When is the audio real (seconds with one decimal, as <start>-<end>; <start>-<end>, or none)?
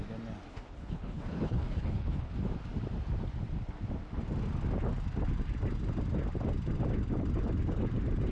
0.0-0.5; 2.3-8.3